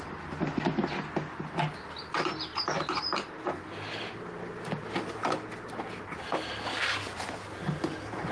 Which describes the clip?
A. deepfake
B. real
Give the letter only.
B